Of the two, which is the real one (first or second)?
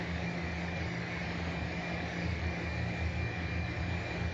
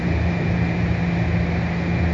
second